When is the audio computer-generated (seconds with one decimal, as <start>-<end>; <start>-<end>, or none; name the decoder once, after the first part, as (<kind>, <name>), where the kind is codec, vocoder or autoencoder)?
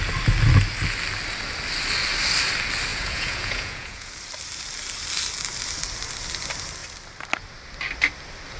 2.9-4.1 (vocoder, Vocos)